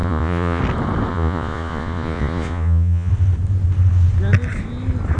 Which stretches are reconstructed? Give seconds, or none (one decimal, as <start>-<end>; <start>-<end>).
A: 0.0-0.6; 1.1-3.1